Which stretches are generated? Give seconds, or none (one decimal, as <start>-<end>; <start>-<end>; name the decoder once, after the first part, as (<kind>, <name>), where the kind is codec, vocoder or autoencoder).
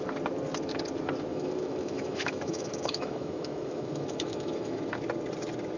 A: 1.3-4.8 (autoencoder, DAC-VAE)